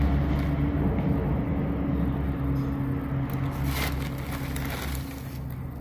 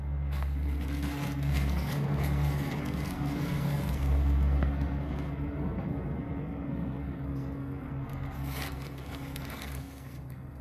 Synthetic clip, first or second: second